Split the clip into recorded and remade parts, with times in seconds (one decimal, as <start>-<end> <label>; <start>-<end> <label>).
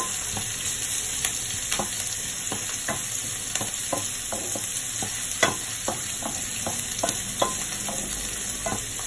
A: 0.0-9.1 recorded